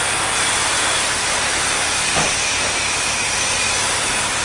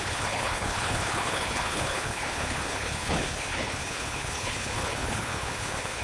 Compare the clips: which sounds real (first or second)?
first